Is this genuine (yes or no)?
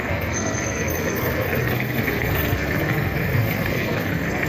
no